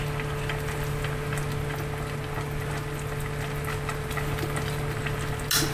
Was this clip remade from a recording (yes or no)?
no